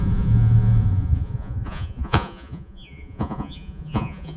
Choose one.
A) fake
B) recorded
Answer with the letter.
A